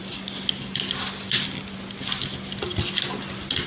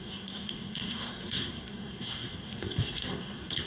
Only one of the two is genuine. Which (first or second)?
first